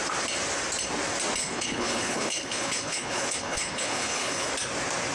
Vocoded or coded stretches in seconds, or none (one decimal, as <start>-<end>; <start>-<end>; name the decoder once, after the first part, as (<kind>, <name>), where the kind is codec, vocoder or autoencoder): 1.4-4.5 (codec, HILCodec)